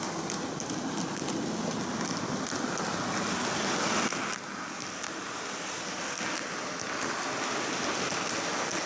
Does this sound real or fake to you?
real